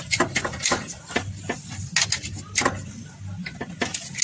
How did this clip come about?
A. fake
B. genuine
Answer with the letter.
B